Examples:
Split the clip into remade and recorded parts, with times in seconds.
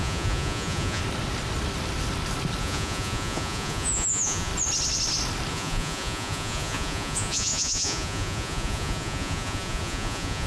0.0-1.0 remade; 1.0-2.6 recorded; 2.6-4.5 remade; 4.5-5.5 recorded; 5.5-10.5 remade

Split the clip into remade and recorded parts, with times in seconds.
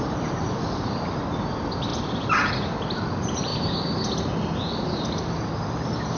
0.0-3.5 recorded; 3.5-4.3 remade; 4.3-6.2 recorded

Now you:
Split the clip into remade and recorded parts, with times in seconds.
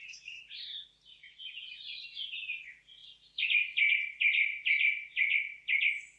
0.0-1.2 recorded; 1.2-1.7 remade; 1.7-6.2 recorded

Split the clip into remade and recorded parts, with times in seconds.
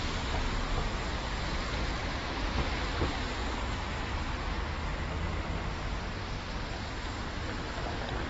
0.0-8.3 recorded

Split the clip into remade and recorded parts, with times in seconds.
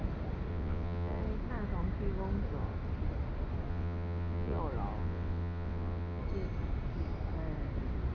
0.0-0.5 recorded; 0.5-1.2 remade; 1.2-3.7 recorded; 3.7-4.6 remade; 4.6-5.0 recorded; 5.0-6.2 remade; 6.2-8.1 recorded